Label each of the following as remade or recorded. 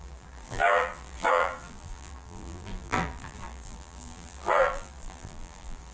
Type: remade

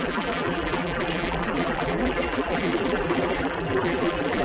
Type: remade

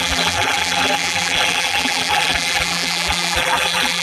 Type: remade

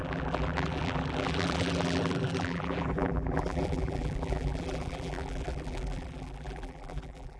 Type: remade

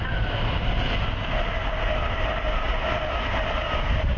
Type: recorded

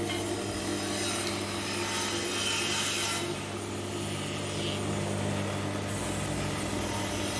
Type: recorded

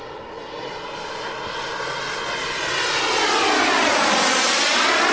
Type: recorded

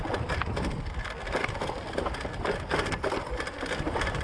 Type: recorded